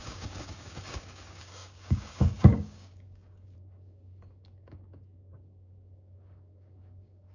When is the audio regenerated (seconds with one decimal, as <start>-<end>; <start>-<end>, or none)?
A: 0.0-7.3